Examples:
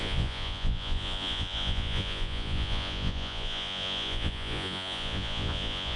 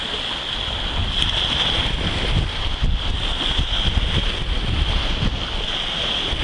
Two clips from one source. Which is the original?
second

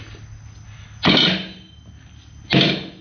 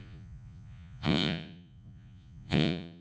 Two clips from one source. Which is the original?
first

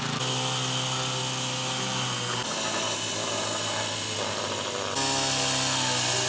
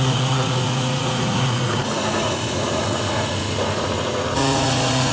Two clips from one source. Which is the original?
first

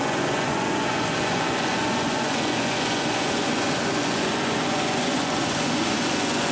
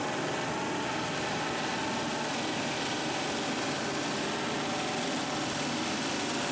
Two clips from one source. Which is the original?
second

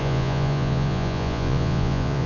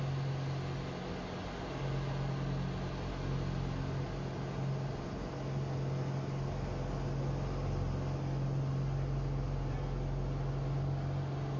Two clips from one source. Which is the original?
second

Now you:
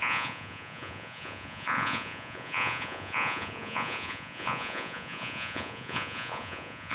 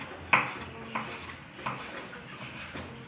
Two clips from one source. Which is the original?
second